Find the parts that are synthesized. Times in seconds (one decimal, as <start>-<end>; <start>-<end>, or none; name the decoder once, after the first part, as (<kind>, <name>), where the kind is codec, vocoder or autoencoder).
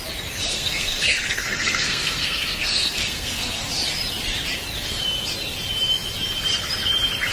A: 0.5-3.6 (codec, SNAC)